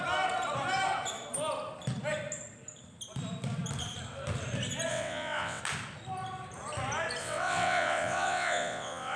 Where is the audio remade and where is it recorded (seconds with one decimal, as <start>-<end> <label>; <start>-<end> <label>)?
0.0-4.9 recorded; 4.9-5.6 remade; 5.6-7.2 recorded; 7.2-9.2 remade